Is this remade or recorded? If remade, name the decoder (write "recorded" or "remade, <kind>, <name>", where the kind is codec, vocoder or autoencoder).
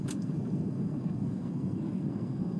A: remade, codec, SNAC